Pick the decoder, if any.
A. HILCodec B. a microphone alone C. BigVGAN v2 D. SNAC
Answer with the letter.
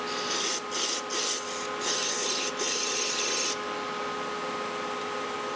B